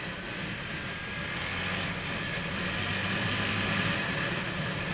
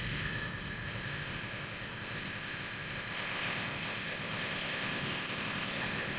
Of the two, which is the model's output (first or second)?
second